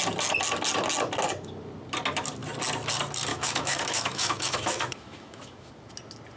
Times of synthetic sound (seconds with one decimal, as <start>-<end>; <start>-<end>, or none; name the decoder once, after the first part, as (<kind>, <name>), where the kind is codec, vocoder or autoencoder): 3.3-5.7 (autoencoder, DAC-VAE)